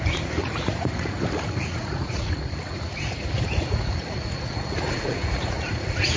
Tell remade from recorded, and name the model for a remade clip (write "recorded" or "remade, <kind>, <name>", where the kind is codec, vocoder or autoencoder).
remade, vocoder, Vocos